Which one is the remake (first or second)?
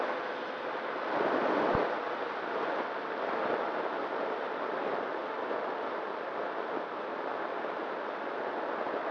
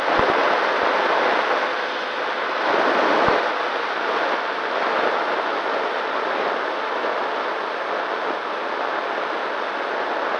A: first